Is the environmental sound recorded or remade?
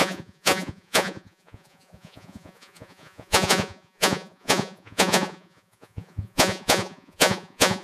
remade